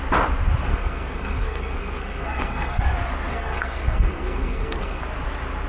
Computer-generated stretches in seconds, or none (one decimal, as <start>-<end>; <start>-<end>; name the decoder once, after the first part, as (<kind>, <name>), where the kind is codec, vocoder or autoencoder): 0.7-2.8 (codec, SNAC); 3.3-5.0